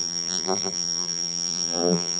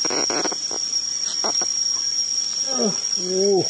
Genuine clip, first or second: second